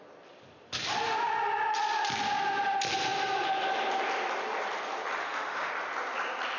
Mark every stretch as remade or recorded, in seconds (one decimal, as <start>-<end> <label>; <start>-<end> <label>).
0.0-5.2 recorded; 5.2-5.7 remade; 5.7-6.6 recorded